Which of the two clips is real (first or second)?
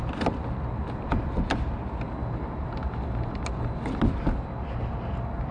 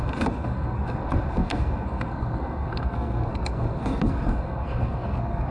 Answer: first